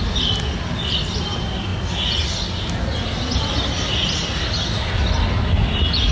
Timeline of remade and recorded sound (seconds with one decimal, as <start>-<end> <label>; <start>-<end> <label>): 0.0-6.1 recorded